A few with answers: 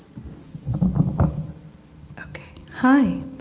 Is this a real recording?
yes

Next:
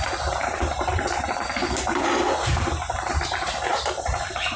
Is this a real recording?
no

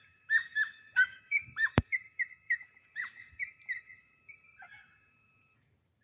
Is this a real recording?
no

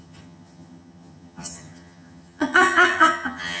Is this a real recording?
no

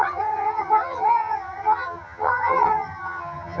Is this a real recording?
no